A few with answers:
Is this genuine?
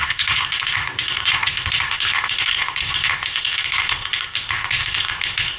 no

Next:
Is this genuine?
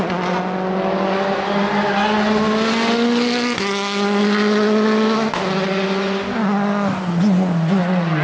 yes